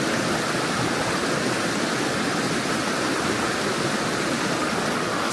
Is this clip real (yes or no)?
yes